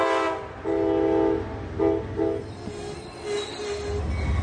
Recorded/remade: recorded